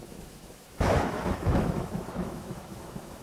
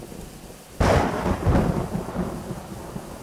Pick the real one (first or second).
second